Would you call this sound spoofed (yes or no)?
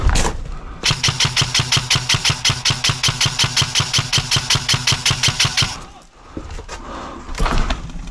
no